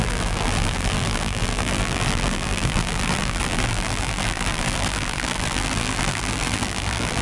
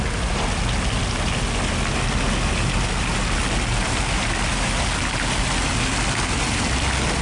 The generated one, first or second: first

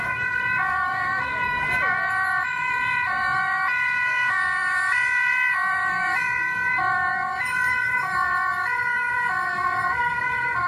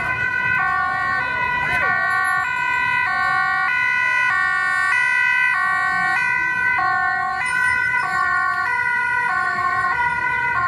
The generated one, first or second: first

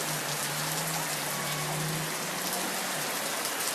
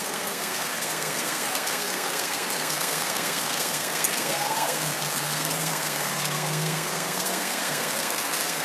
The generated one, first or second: second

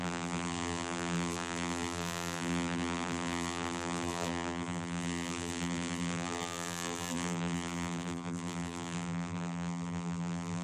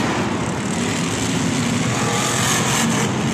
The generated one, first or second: first